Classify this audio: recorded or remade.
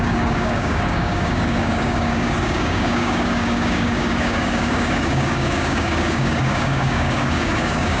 remade